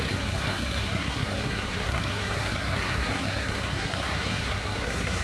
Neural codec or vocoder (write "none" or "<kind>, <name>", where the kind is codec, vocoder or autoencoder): codec, SNAC